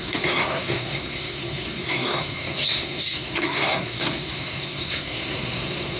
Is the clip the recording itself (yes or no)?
no